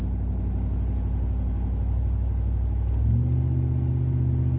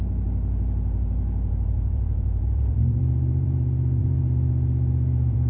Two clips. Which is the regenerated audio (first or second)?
second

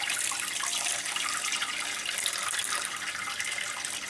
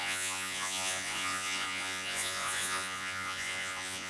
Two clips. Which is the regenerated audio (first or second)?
second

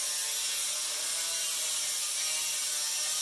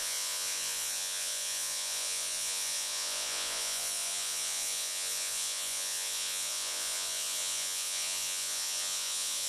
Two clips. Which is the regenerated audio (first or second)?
second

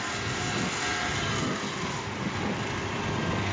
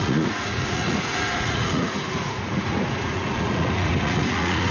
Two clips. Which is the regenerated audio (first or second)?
second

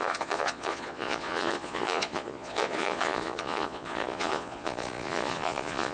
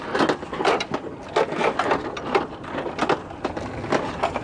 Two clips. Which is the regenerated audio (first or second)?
first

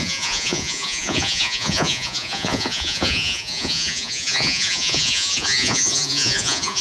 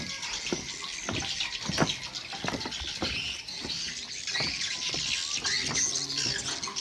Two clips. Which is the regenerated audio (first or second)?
first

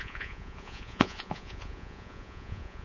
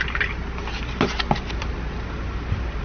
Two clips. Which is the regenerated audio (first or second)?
first